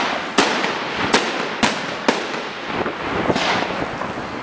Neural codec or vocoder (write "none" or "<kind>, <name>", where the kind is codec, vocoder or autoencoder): none